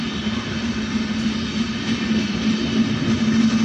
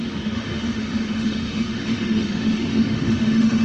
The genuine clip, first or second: first